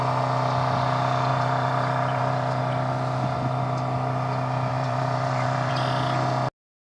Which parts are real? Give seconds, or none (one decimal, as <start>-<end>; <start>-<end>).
0.0-1.3; 2.6-4.7; 5.7-6.9